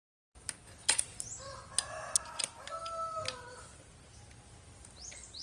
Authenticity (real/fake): real